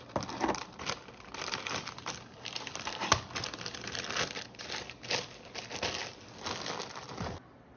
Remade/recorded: recorded